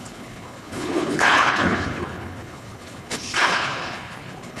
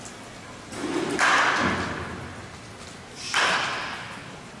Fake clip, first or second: first